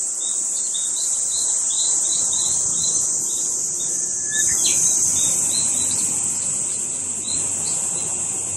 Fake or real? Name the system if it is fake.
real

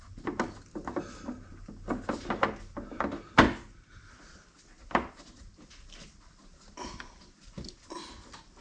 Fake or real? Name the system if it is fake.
real